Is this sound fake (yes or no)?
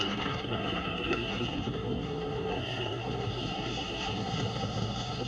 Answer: yes